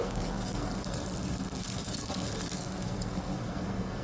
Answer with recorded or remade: remade